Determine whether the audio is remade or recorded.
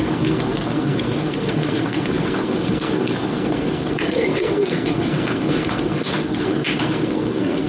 remade